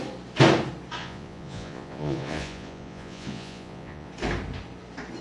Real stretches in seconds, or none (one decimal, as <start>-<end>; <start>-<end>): 0.0-1.0; 4.1-5.2